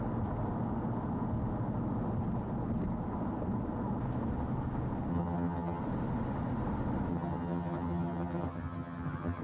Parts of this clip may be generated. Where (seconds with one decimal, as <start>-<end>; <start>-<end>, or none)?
5.1-5.8; 7.1-9.4